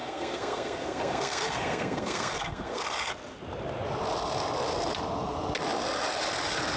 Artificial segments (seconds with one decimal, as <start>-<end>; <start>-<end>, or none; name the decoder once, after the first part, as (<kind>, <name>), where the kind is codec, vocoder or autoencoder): 0.0-3.1 (codec, SNAC)